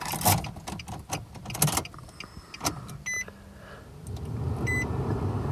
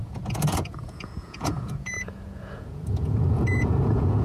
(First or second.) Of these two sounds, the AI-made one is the second